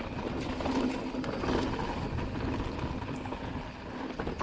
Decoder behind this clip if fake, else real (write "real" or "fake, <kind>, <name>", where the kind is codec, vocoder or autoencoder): real